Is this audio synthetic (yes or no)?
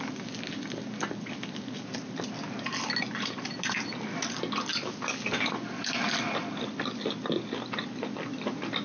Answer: no